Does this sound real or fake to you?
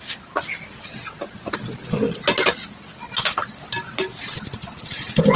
real